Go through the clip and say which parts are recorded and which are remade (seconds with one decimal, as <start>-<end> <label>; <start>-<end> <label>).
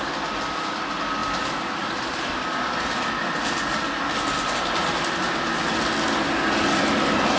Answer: 0.0-7.4 recorded